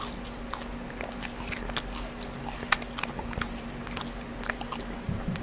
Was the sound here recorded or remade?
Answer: recorded